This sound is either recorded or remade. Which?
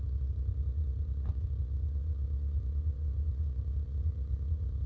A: remade